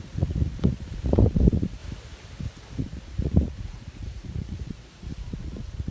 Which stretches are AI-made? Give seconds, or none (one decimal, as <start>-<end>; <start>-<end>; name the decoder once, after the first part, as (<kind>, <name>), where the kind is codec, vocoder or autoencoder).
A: 0.0-1.8 (vocoder, Vocos); 2.8-5.9